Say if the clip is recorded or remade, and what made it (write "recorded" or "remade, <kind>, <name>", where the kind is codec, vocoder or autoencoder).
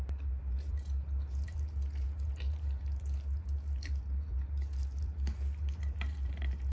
remade, vocoder, BigVGAN v2